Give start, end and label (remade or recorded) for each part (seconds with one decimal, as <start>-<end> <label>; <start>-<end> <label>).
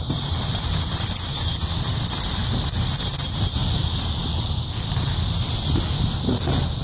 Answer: 0.0-6.8 recorded